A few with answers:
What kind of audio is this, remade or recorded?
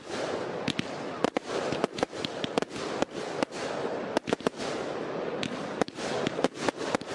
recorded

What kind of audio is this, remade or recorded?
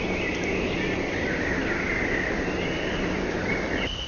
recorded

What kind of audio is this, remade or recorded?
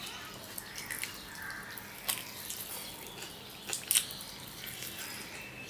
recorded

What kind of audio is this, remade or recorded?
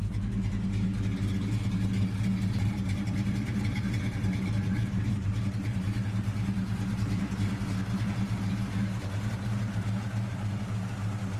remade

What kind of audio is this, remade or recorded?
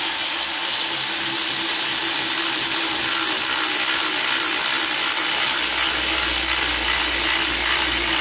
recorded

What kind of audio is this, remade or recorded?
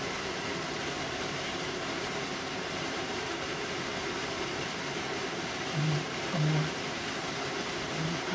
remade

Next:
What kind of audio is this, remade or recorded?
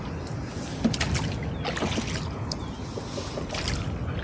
recorded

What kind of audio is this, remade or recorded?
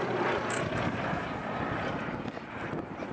remade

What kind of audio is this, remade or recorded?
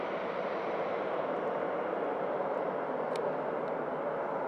remade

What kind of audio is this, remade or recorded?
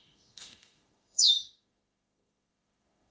remade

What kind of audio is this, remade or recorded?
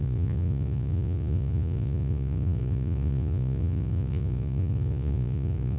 remade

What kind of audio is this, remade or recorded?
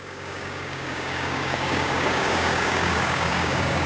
remade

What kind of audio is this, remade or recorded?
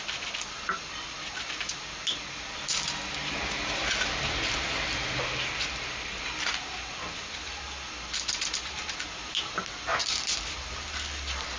recorded